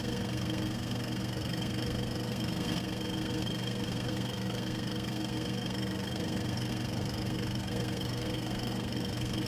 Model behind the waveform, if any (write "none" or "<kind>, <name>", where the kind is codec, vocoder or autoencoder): codec, SNAC